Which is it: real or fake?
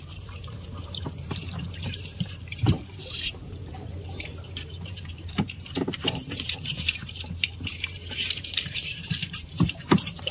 fake